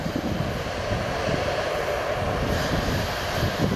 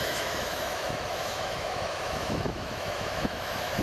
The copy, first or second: second